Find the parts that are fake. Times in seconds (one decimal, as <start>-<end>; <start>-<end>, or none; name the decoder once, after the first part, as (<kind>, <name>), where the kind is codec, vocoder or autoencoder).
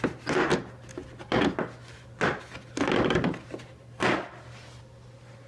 none